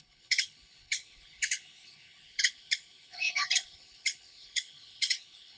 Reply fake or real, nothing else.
fake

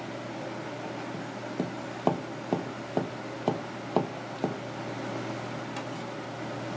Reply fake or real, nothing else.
real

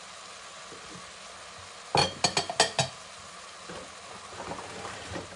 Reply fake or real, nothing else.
real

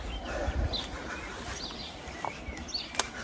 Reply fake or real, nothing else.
real